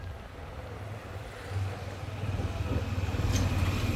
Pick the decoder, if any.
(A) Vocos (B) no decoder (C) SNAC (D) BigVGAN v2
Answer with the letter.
B